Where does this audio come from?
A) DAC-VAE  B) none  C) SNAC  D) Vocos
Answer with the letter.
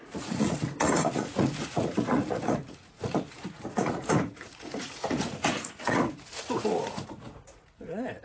D